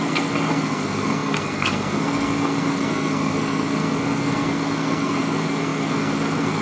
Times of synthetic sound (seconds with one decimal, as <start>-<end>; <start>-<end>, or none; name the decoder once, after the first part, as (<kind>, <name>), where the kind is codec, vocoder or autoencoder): 0.0-6.6 (codec, SNAC)